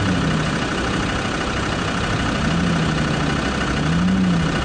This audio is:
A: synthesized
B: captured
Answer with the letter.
B